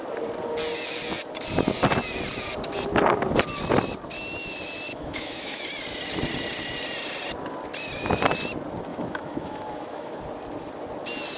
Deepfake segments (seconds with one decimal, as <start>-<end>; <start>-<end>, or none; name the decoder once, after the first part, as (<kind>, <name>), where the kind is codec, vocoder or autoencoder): 4.9-5.6 (autoencoder, DAC-VAE); 8.9-10.2